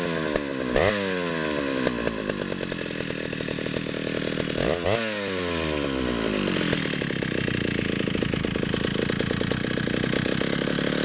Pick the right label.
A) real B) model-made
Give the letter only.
A